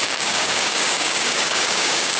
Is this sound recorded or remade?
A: remade